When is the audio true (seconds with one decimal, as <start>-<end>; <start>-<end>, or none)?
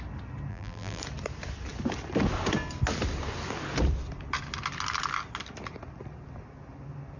0.0-0.5; 1.0-7.2